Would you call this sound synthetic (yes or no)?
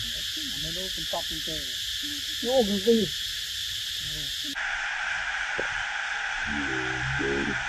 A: no